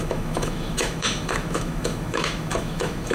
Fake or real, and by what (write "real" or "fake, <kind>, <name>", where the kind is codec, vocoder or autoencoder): fake, autoencoder, DAC-VAE